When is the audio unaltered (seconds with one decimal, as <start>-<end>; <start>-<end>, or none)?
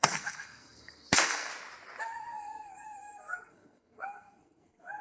1.5-2.0